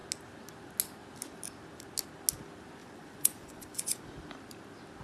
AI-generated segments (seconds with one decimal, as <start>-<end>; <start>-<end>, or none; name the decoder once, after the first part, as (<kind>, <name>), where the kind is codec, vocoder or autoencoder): 2.8-4.0 (vocoder, Vocos)